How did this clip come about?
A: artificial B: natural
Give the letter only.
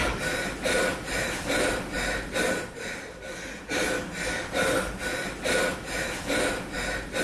B